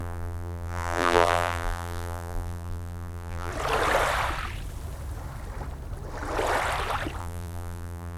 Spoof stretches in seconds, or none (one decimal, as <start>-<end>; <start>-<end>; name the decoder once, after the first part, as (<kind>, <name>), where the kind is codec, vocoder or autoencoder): 0.0-3.5 (vocoder, BigVGAN v2); 7.2-8.2